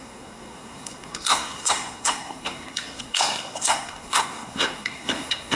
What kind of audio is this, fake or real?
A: fake